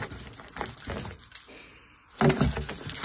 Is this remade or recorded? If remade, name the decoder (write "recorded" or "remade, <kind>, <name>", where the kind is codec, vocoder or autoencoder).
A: recorded